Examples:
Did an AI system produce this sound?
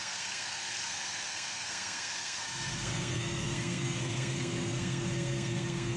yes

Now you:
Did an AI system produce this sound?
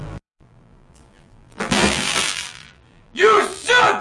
yes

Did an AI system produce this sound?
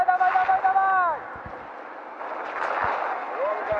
no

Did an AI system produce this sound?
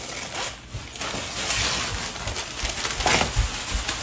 no